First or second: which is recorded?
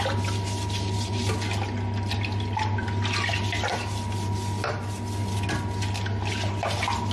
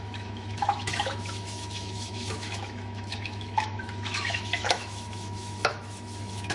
first